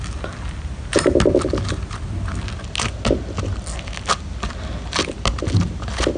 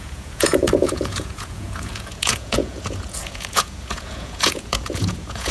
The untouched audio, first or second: first